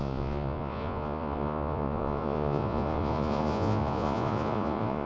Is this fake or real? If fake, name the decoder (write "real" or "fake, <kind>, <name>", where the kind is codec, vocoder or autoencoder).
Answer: fake, vocoder, Vocos